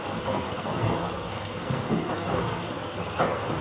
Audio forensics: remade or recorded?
remade